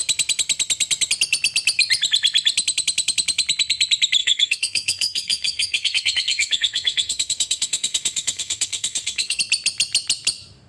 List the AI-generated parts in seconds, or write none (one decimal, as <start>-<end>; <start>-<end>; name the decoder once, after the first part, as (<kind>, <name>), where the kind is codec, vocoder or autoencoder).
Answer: 4.2-9.4 (codec, SNAC)